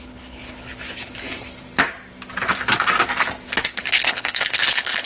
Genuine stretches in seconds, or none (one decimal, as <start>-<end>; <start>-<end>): 0.7-3.8